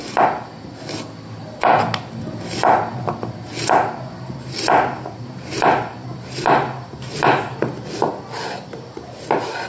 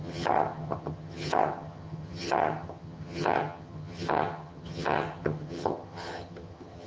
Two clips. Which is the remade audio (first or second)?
second